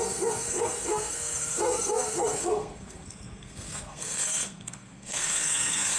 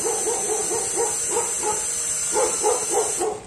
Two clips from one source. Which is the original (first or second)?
second